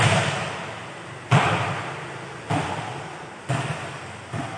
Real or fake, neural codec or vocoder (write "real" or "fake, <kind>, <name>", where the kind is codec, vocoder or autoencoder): real